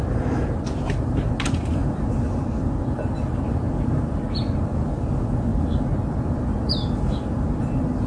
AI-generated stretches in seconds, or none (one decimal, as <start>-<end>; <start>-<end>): none